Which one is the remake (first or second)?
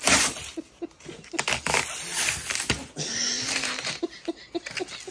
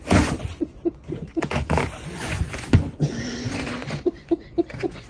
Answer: second